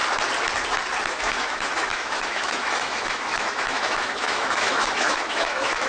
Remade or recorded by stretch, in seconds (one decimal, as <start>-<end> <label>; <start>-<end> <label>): 0.0-1.1 recorded; 1.1-5.9 remade